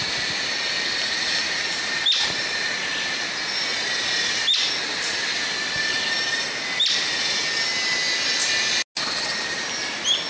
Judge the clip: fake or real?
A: real